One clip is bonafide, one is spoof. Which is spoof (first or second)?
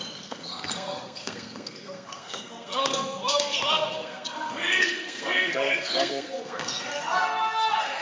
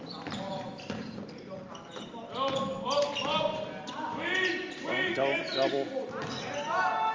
first